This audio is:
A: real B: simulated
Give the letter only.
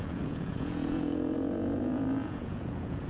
B